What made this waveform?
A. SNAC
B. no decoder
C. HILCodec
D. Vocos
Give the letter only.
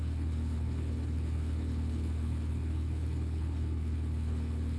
C